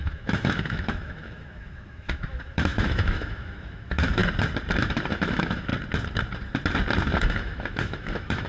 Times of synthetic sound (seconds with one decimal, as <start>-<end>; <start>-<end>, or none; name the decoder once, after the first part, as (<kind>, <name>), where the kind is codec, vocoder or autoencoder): 0.0-4.2 (autoencoder, DAC-VAE); 4.8-5.7; 7.2-8.5